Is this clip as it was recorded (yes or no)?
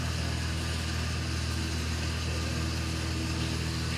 yes